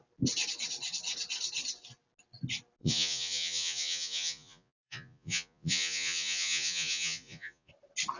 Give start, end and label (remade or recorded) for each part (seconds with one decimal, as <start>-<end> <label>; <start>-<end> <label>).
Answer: 0.0-2.8 recorded; 2.8-7.7 remade; 7.7-8.2 recorded